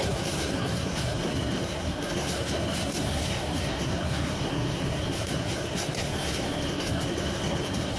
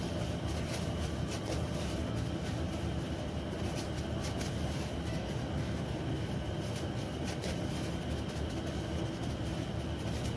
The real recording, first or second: second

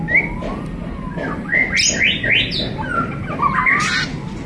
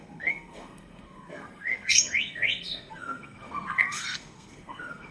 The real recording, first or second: first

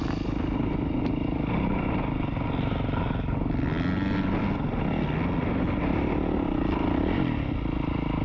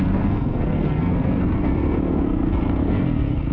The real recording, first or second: first